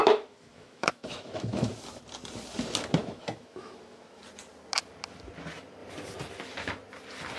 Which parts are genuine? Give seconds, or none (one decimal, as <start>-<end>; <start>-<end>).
1.7-3.0; 4.2-7.4